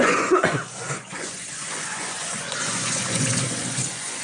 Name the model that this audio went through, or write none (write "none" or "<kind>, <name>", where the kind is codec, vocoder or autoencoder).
vocoder, Vocos